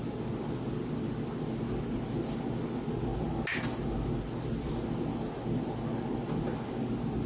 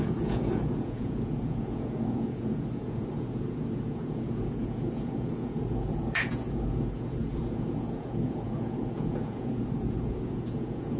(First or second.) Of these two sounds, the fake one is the second